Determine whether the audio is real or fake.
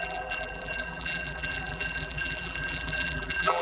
fake